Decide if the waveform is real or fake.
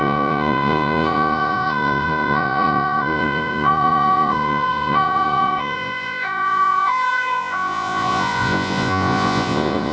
fake